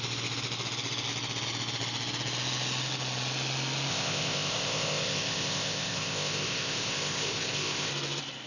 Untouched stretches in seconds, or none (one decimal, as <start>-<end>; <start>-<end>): 0.0-3.9; 7.9-8.5